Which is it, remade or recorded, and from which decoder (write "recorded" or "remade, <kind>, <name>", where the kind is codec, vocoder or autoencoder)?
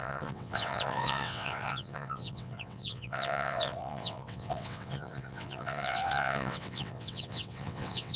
remade, vocoder, WaveNeXt